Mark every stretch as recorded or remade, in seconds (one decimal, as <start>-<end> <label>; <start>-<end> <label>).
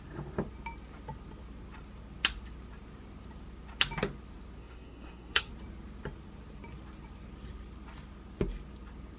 0.0-4.6 recorded; 4.6-5.5 remade; 5.5-9.2 recorded